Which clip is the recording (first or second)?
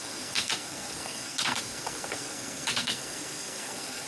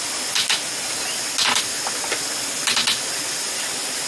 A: second